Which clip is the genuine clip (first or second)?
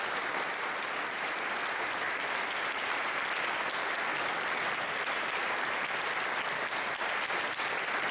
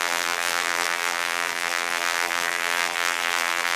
first